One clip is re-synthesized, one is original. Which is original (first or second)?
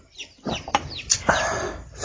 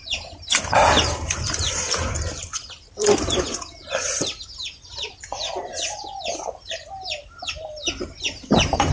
first